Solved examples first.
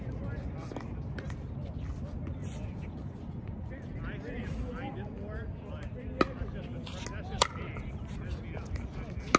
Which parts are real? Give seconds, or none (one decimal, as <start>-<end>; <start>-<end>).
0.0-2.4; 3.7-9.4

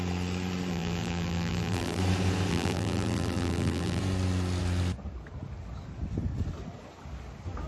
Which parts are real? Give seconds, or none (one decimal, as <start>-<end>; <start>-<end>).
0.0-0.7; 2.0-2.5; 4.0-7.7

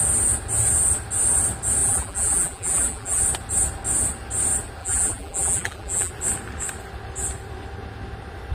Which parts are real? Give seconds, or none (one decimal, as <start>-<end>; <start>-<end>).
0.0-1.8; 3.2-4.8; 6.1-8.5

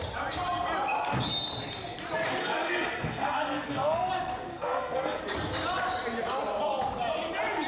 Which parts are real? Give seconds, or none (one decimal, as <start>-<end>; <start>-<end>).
0.0-2.4; 4.1-4.5; 5.2-7.7

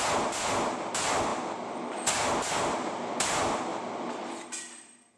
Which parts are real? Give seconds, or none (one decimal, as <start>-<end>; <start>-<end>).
0.0-5.2

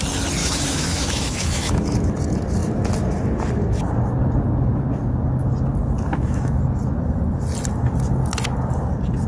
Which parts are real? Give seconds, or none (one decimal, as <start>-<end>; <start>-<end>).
0.0-0.4; 2.1-6.1; 6.6-9.3

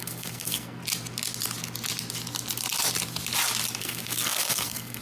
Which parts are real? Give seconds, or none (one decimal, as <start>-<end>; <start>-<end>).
0.8-3.8